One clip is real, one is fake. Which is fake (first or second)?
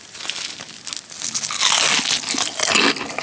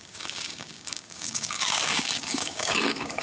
second